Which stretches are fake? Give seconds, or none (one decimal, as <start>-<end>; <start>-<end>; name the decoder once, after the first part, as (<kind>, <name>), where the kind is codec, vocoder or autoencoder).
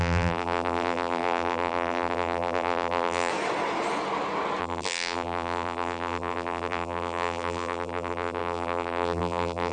0.0-3.3 (vocoder, BigVGAN v2); 4.6-9.7